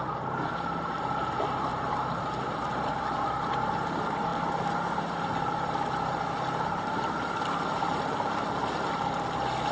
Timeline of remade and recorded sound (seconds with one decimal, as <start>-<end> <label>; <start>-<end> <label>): 0.0-9.7 recorded